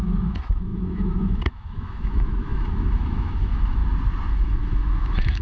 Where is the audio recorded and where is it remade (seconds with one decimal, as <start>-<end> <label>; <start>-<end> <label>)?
0.0-3.8 remade; 3.8-4.3 recorded; 4.3-5.4 remade